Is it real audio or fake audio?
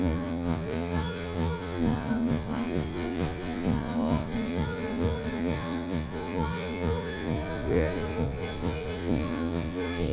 fake